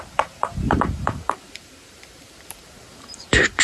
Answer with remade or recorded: remade